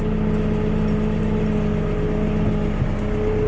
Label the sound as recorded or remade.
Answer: recorded